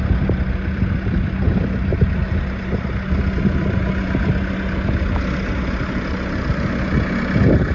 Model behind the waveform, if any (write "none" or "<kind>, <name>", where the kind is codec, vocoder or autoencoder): none